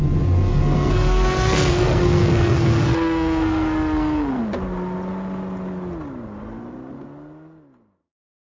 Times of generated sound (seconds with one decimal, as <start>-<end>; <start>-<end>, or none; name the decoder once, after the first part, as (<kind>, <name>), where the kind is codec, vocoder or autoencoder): 0.5-4.4 (codec, SNAC)